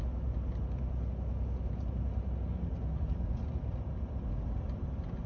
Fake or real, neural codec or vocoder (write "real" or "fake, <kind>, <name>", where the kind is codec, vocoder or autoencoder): real